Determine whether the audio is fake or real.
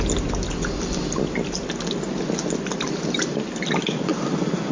real